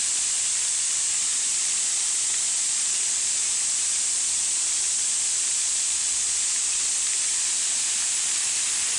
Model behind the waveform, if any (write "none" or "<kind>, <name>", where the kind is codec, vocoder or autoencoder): vocoder, BigVGAN v2